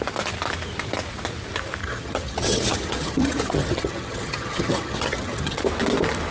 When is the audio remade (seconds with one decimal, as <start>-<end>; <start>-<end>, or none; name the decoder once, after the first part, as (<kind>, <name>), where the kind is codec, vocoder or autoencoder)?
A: 1.8-5.6 (vocoder, HiFi-GAN)